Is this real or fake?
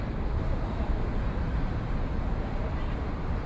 real